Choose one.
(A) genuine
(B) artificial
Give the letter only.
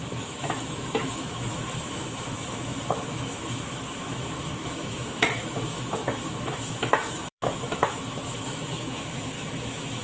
B